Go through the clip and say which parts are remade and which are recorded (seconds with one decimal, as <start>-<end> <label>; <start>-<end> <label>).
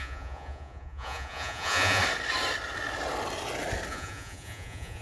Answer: 0.0-2.0 remade; 2.0-3.9 recorded; 3.9-5.0 remade